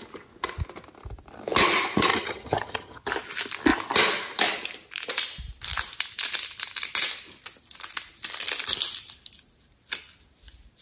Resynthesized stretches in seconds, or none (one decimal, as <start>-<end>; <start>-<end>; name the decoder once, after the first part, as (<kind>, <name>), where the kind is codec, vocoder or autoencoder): 2.1-3.0 (vocoder, HiFi-GAN)